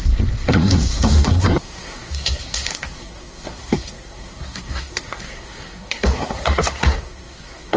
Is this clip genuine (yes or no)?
no